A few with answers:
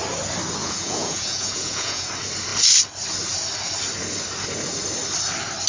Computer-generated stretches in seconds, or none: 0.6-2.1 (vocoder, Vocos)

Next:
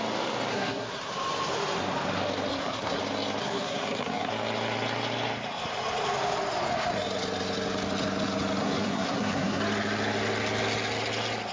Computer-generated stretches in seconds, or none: 0.5-1.1 (codec, SNAC); 2.5-3.0; 3.4-4.3; 8.6-9.6

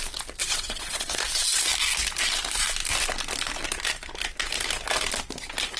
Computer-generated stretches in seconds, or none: 0.4-1.2 (vocoder, WaveNeXt)